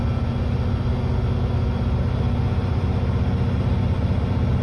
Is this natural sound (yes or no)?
yes